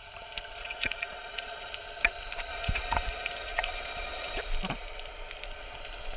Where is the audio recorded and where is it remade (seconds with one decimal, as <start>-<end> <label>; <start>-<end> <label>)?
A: 0.0-0.6 recorded; 0.6-1.7 remade; 1.7-2.5 recorded; 2.5-4.4 remade; 4.4-6.2 recorded